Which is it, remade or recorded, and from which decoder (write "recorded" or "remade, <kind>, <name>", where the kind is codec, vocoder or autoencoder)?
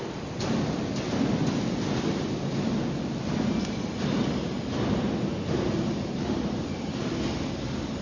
recorded